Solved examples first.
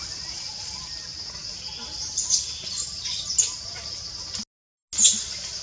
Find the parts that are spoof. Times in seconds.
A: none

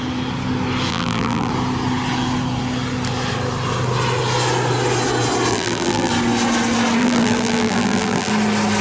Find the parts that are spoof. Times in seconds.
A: 0.9-1.5 (vocoder, BigVGAN v2); 5.5-6.1; 7.0-8.3

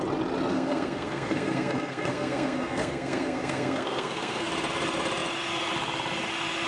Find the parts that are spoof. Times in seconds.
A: 0.5-4.5 (codec, SNAC)